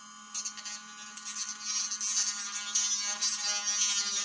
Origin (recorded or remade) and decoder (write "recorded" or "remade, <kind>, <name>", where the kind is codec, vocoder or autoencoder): recorded